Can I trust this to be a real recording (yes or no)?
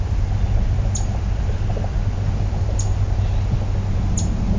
yes